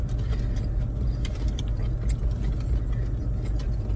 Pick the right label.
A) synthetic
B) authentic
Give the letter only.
B